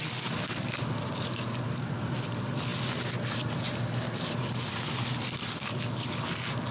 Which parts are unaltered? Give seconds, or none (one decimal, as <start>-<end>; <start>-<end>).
0.0-6.7